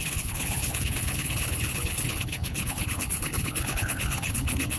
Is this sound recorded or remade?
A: remade